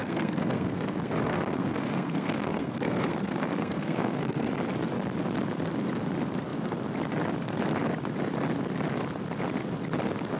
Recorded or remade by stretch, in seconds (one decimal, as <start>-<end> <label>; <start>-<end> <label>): 0.0-4.5 remade; 4.5-10.4 recorded